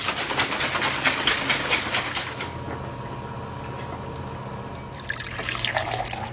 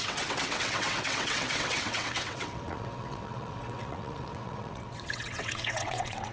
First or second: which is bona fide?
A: first